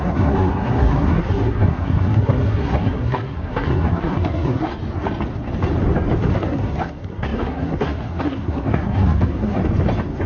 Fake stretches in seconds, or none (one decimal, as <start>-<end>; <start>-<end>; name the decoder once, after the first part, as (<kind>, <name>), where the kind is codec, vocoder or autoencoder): 0.0-4.7 (codec, SNAC); 6.3-9.6